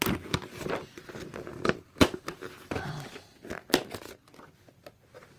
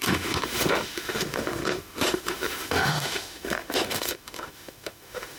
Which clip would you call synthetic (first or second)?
second